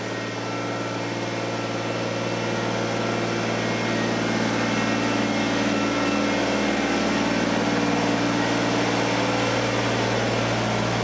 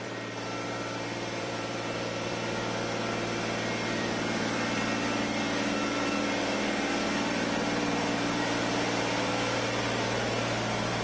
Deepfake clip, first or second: second